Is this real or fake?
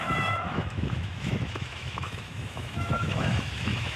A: fake